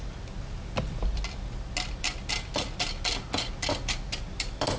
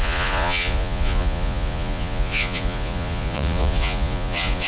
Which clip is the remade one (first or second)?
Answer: second